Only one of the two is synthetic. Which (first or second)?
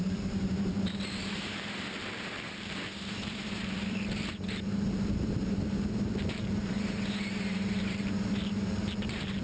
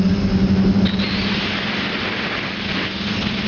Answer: first